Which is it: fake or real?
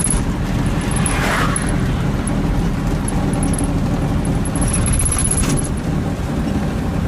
real